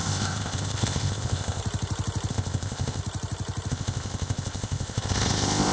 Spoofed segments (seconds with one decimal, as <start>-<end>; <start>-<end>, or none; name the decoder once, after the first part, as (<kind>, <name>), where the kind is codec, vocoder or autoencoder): 0.0-1.6 (codec, ZipCodec); 2.3-3.0; 3.7-5.7